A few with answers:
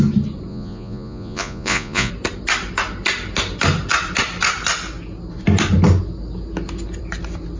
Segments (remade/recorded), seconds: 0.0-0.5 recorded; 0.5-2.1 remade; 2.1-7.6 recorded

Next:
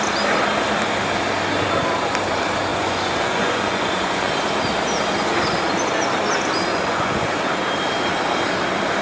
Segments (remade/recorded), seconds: 0.0-2.7 recorded; 2.7-4.3 remade; 4.3-6.7 recorded; 6.7-7.3 remade; 7.3-9.0 recorded

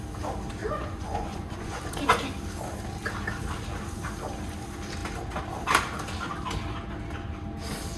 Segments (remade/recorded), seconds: 0.0-0.6 recorded; 0.6-1.8 remade; 1.8-8.0 recorded

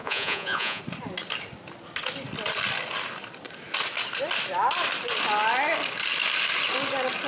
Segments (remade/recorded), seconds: 0.0-0.8 remade; 0.8-7.3 recorded

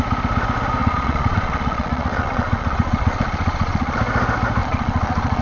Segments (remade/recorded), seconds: 0.0-0.8 recorded; 0.8-4.0 remade; 4.0-4.6 recorded; 4.6-5.4 remade

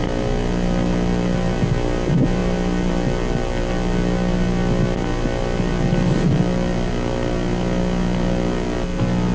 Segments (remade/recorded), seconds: 0.0-9.3 recorded

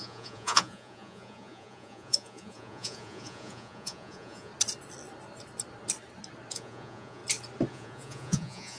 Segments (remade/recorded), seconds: 0.0-4.5 remade; 4.5-6.5 recorded; 6.5-7.2 remade; 7.2-7.7 recorded; 7.7-8.8 remade